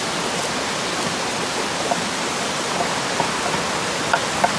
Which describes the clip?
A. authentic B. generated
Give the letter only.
A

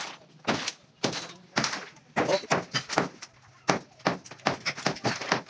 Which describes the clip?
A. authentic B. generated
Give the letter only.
A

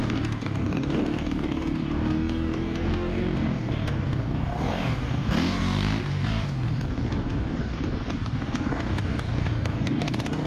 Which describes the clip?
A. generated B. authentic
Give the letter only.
A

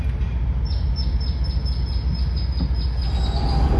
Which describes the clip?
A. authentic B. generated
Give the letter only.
A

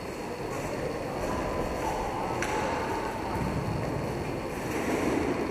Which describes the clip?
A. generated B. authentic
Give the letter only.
B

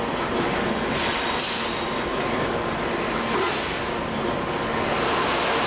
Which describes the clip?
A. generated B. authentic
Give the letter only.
B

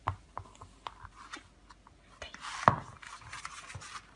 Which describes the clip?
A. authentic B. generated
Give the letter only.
A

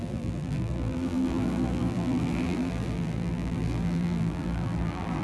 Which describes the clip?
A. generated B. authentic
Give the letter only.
A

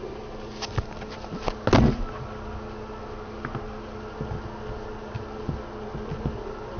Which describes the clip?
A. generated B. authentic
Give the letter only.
B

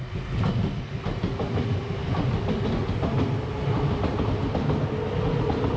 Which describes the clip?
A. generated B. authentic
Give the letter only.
B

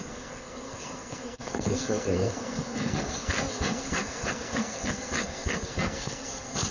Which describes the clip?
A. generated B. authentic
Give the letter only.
A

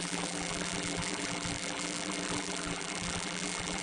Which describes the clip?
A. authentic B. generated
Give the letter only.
B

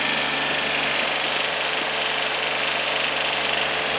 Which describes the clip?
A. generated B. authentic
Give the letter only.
B